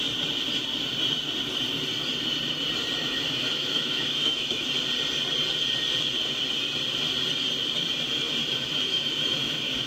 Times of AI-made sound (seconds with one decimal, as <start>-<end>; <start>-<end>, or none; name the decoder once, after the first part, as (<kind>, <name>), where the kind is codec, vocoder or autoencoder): 3.0-4.7 (autoencoder, DAC-VAE); 8.4-9.9